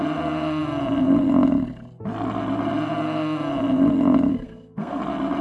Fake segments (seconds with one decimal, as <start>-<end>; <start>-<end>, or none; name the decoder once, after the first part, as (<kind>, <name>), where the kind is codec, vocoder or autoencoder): 4.3-5.0 (codec, SNAC)